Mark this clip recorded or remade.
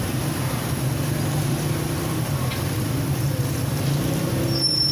recorded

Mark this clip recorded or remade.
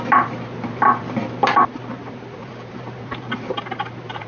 remade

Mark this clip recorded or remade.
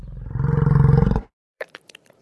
remade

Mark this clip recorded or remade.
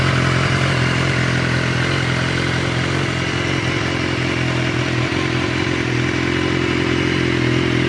recorded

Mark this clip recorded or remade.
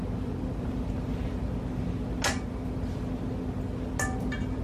recorded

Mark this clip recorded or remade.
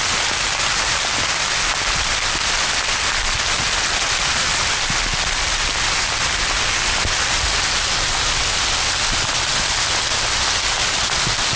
recorded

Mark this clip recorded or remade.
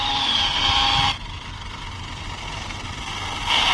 remade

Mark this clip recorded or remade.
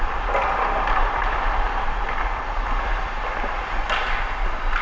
remade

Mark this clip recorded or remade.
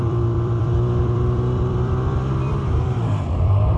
remade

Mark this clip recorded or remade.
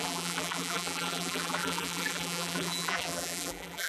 remade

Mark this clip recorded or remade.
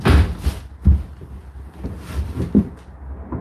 recorded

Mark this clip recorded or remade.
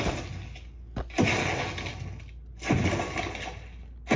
recorded